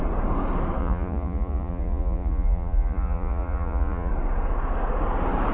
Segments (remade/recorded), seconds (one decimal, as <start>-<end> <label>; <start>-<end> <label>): 0.0-0.8 recorded; 0.8-4.1 remade; 4.1-5.5 recorded